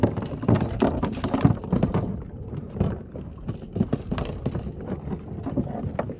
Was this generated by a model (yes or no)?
no